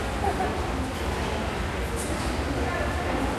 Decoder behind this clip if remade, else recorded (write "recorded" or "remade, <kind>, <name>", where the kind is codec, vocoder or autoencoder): recorded